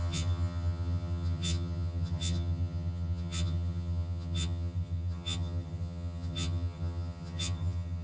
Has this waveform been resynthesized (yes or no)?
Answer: yes